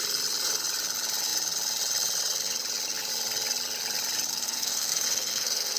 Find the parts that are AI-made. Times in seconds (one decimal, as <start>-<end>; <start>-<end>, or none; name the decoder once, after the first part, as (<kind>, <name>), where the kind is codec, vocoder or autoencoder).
4.3-5.8 (codec, SNAC)